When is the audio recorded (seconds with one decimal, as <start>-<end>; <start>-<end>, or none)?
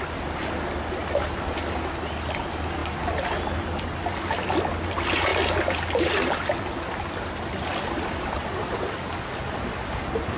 0.0-1.0; 1.5-7.7; 8.4-10.4